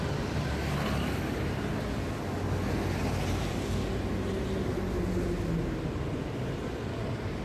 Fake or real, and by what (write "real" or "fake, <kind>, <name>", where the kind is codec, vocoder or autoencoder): real